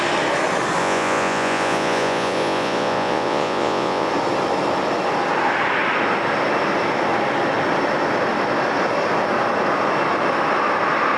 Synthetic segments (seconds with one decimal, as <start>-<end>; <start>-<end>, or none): 0.8-4.1